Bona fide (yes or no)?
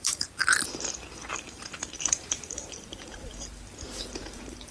no